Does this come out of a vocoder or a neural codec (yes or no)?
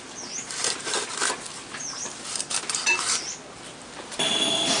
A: no